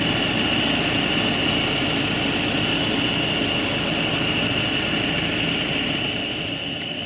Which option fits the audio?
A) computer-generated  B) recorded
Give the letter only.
B